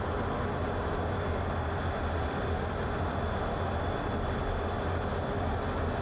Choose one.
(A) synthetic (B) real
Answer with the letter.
B